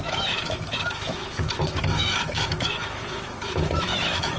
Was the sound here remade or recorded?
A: remade